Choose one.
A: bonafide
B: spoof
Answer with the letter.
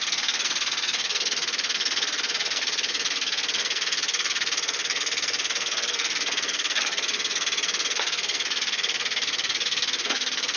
B